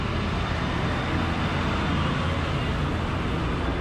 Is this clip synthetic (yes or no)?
no